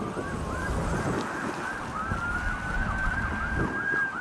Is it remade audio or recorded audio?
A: recorded